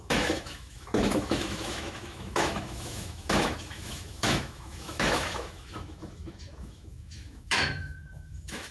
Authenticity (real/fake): fake